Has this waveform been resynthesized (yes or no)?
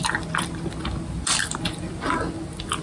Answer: no